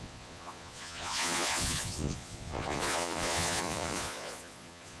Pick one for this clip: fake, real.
fake